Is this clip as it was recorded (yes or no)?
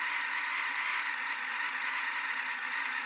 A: no